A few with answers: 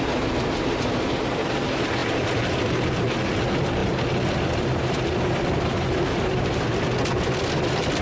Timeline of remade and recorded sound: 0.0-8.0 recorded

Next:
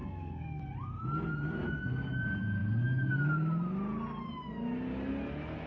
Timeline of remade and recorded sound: 0.0-0.6 remade; 0.6-5.7 recorded